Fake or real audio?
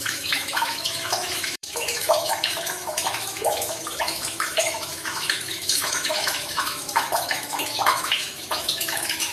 fake